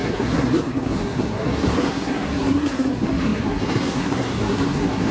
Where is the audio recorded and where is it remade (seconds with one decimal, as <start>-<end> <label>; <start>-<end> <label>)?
0.0-5.1 remade